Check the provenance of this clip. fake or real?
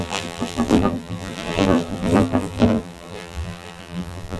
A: fake